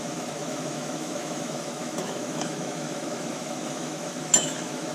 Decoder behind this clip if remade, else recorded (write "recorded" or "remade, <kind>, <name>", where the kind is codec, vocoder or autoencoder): remade, autoencoder, DAC-VAE